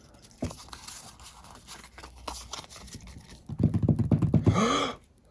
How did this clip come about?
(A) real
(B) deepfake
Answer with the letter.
A